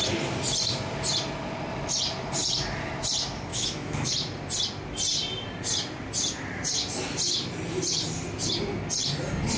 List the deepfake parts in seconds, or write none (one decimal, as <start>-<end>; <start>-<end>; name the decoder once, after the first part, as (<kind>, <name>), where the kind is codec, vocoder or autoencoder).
3.5-4.1 (autoencoder, DAC-VAE)

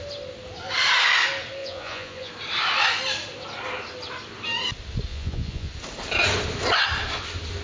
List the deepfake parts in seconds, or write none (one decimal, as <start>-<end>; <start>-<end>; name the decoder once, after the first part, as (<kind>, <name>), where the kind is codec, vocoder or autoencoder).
1.6-2.3 (vocoder, Vocos); 5.1-5.7